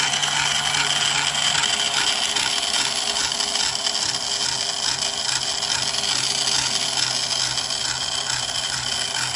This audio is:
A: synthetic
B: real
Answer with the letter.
B